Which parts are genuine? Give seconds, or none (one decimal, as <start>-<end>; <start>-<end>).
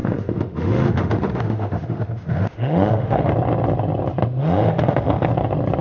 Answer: 3.3-4.4; 5.3-5.8